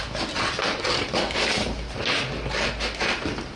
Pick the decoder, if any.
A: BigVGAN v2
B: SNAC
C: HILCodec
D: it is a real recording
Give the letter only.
D